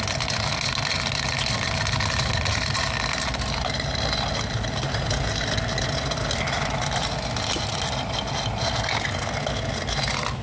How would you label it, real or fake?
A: real